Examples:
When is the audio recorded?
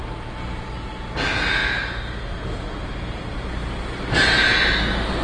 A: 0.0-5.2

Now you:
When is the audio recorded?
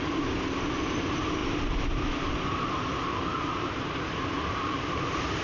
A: 0.0-5.4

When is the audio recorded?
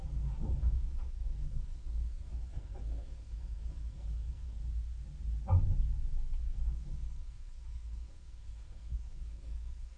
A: 4.6-6.4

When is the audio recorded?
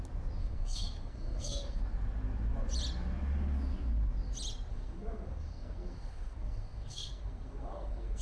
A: 0.0-0.4; 1.8-4.7